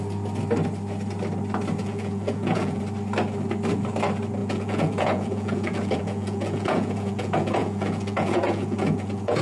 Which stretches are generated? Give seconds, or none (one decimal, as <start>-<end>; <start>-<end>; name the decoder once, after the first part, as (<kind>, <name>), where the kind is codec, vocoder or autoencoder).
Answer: 1.8-2.8 (vocoder, Vocos); 4.4-9.4